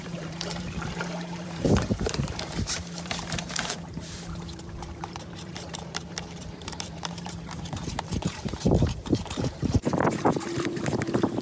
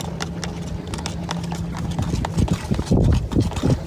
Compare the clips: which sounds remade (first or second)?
first